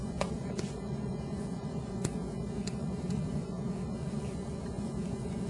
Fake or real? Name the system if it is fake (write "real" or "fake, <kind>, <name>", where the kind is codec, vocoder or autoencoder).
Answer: fake, vocoder, Vocos